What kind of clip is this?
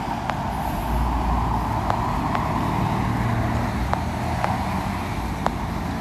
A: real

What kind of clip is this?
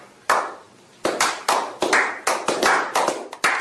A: fake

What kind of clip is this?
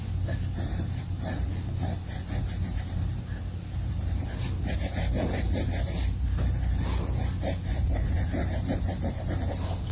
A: real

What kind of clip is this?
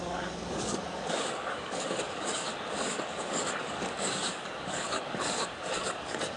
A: fake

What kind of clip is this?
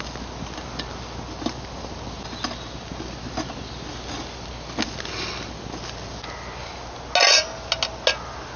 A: real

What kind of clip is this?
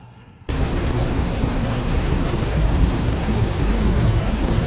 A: fake